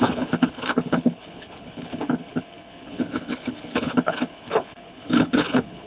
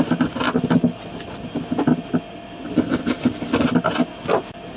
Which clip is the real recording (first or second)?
second